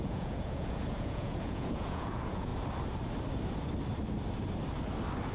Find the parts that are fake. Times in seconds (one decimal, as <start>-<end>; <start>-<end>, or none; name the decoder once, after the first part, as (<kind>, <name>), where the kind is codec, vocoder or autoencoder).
0.0-2.5 (vocoder, Vocos)